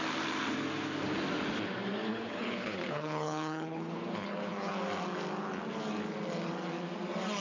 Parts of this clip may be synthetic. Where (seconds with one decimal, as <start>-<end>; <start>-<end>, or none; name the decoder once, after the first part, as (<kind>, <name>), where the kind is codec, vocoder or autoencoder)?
2.1-4.7 (codec, HILCodec)

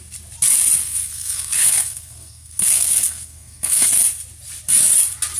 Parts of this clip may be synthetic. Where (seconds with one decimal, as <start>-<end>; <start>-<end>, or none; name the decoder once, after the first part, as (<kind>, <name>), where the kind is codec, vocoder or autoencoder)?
0.8-4.0 (codec, SNAC)

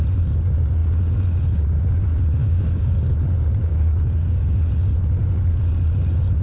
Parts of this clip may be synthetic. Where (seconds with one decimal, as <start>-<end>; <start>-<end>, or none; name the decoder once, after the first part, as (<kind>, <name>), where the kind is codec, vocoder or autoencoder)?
2.4-2.9 (codec, DAC); 3.7-4.6